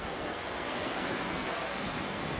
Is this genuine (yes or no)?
no